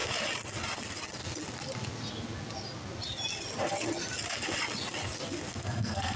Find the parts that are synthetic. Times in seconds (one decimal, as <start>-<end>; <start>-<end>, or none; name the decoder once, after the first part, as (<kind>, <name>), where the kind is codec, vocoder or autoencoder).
5.5-6.2 (codec, SNAC)